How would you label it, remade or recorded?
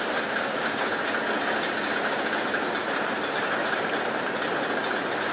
recorded